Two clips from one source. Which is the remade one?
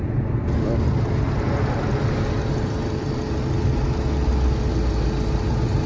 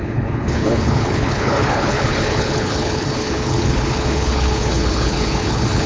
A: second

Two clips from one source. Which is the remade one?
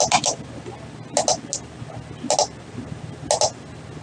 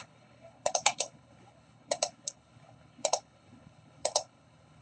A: second